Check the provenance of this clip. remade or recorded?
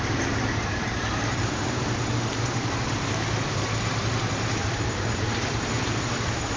remade